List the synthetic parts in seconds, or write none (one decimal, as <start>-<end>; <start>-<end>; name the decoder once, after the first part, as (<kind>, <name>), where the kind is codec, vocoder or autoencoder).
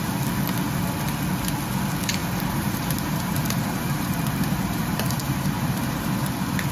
2.2-6.2 (vocoder, BigVGAN v2)